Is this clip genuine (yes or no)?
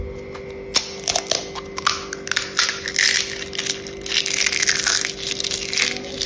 yes